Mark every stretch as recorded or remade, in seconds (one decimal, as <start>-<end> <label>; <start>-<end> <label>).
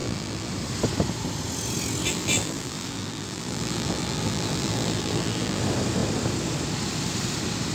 0.0-0.5 remade; 0.5-2.1 recorded; 2.1-5.6 remade; 5.6-7.7 recorded